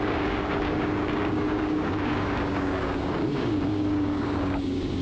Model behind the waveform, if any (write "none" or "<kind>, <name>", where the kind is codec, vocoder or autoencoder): codec, DAC